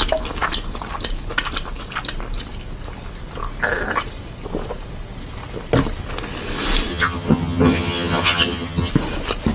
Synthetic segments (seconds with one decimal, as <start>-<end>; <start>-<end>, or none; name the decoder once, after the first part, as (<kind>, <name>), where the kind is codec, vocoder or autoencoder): 6.9-8.9 (vocoder, HiFi-GAN)